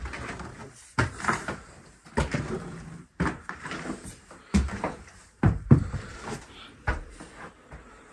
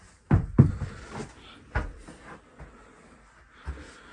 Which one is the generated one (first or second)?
first